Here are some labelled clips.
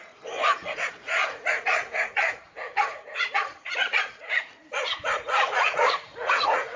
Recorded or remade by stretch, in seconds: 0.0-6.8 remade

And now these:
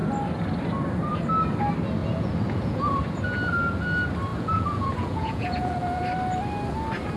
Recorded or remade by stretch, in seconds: 0.0-2.0 recorded; 2.0-3.0 remade; 3.0-4.3 recorded; 4.3-6.0 remade; 6.0-7.2 recorded

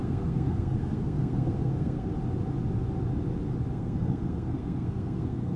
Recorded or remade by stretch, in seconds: 0.0-2.1 remade; 2.1-3.7 recorded; 3.7-5.6 remade

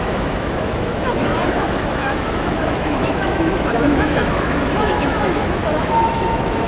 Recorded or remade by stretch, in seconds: 0.0-6.7 remade

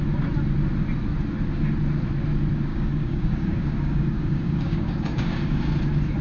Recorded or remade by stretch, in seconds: 0.0-2.7 recorded; 2.7-5.6 remade; 5.6-6.2 recorded